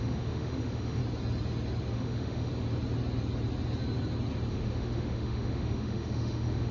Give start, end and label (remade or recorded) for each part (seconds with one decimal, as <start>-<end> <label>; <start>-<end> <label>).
0.0-1.0 remade; 1.0-1.9 recorded; 1.9-2.5 remade; 2.5-4.5 recorded; 4.5-6.7 remade